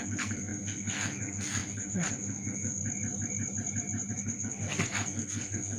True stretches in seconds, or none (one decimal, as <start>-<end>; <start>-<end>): 2.8-4.1